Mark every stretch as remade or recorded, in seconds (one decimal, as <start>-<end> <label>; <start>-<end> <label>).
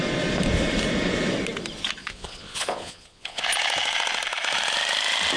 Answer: 0.0-2.0 recorded; 2.0-3.4 remade; 3.4-5.4 recorded